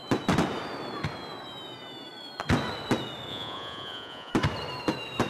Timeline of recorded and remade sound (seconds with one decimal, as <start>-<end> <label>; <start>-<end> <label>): 0.0-3.3 recorded; 3.3-4.3 remade; 4.3-5.3 recorded